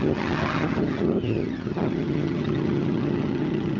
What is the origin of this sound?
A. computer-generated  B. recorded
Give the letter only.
A